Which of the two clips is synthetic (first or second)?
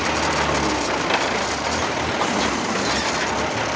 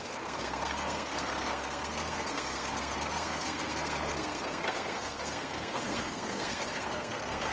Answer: second